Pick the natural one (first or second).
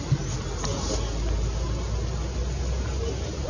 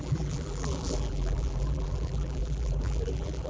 first